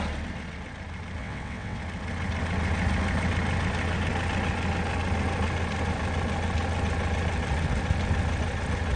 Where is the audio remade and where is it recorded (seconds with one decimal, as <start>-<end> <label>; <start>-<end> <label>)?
0.0-1.2 recorded; 1.2-1.8 remade; 1.8-9.0 recorded